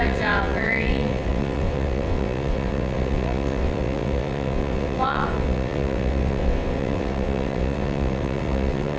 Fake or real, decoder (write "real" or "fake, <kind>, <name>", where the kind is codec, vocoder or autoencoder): fake, vocoder, WaveNeXt